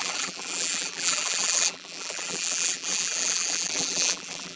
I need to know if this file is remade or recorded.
remade